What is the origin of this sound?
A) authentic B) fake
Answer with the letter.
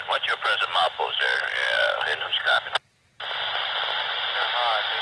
A